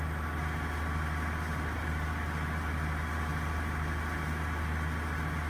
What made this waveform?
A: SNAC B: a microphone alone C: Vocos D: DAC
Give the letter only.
B